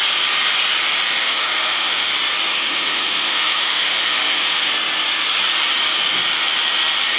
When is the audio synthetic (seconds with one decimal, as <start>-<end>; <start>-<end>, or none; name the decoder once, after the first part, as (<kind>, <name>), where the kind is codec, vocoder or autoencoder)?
1.2-2.1 (autoencoder, DAC-VAE); 2.5-4.7

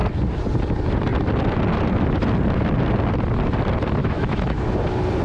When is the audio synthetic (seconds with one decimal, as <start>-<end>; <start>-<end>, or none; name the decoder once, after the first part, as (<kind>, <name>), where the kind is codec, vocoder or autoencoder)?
4.0-4.6 (autoencoder, DAC-VAE)

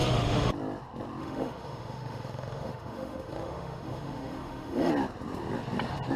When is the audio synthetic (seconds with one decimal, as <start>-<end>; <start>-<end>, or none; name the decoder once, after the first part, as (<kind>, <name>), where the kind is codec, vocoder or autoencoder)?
0.0-0.5 (autoencoder, DAC-VAE); 1.2-4.9

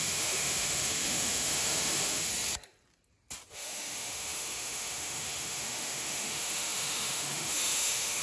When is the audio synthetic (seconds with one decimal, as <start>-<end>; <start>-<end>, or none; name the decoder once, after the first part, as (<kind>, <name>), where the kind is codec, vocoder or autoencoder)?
0.0-2.3 (autoencoder, DAC-VAE); 3.5-8.2

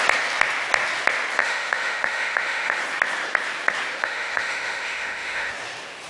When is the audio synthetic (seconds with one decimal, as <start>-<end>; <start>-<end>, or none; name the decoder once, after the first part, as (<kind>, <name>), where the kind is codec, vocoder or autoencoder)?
1.4-2.8 (autoencoder, DAC-VAE); 4.0-5.5